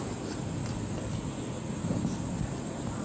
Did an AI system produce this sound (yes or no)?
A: no